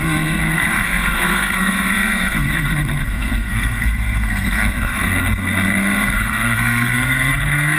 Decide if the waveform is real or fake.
fake